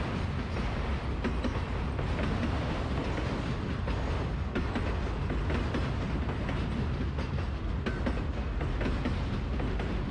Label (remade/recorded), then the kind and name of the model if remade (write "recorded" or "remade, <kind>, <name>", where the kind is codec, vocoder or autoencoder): recorded